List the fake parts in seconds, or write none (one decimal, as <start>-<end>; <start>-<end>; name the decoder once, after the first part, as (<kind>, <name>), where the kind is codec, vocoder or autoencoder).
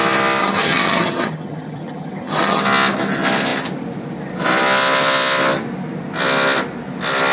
0.4-2.6 (vocoder, HiFi-GAN)